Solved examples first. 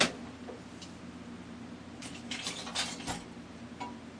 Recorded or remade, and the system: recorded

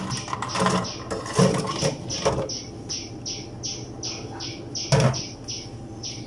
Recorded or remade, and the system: recorded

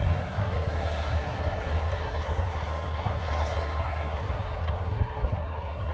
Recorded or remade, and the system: remade, codec, SNAC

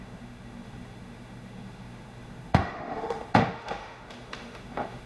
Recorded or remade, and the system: remade, autoencoder, DAC-VAE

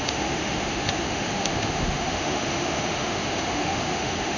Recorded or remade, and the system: remade, autoencoder, DAC-VAE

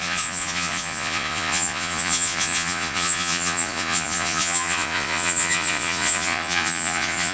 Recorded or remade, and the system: remade, vocoder, Vocos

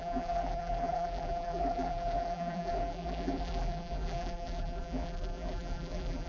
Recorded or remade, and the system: remade, vocoder, BigVGAN v2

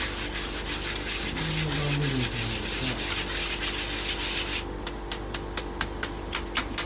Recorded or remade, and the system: recorded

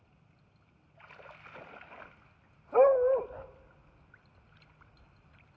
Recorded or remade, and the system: recorded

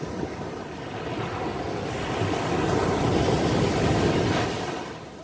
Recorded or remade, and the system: recorded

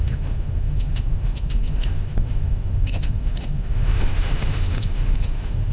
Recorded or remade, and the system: remade, autoencoder, DAC-VAE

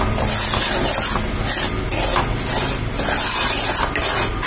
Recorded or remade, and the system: recorded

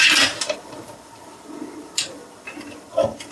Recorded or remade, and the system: remade, vocoder, BigVGAN v2